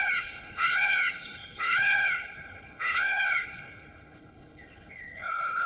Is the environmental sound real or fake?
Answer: fake